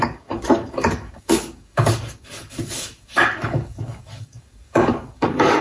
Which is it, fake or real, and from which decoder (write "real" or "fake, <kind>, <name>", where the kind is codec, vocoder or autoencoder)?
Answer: fake, codec, DAC